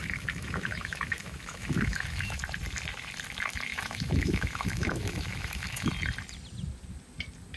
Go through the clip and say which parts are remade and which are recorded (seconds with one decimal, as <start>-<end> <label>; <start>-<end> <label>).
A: 0.0-2.4 remade; 2.4-3.7 recorded; 3.7-5.9 remade; 5.9-7.6 recorded